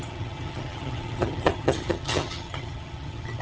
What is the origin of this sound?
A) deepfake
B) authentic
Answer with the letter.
A